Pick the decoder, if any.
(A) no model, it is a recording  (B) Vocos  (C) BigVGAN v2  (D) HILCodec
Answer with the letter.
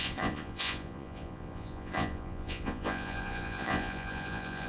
B